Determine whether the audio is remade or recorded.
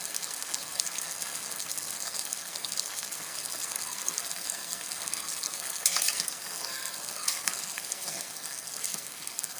remade